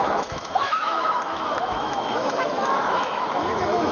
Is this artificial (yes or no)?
yes